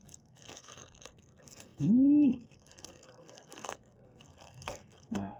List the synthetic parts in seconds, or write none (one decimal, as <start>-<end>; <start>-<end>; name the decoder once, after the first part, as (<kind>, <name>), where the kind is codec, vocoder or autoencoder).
0.0-5.4 (codec, SNAC)